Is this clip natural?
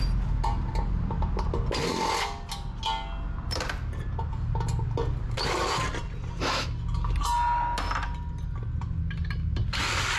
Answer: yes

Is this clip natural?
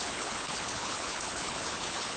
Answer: no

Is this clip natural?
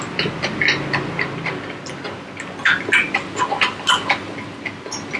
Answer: yes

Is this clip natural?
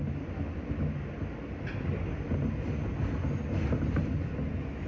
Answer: yes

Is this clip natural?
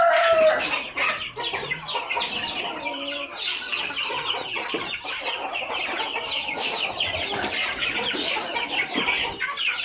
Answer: yes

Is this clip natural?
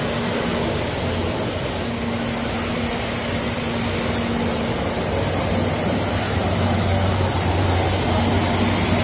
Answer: yes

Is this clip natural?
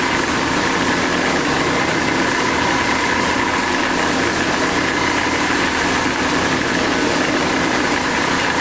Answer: yes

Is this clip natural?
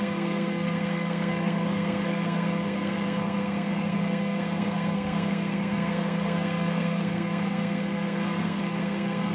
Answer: no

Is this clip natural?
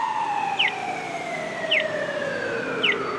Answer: yes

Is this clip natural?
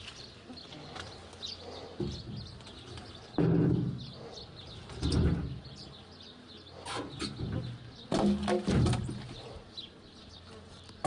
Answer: yes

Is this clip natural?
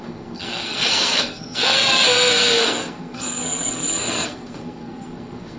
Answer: no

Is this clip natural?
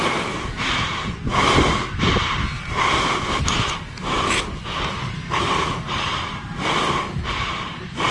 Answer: no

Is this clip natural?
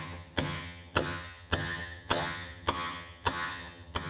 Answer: no